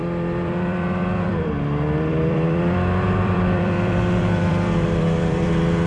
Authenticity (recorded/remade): remade